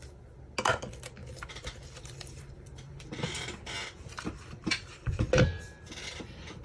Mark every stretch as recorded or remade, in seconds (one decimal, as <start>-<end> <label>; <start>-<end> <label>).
0.0-1.2 recorded; 1.2-5.2 remade; 5.2-6.6 recorded